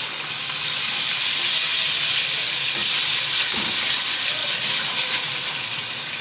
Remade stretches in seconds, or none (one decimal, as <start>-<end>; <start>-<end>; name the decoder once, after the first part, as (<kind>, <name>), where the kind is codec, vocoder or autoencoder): none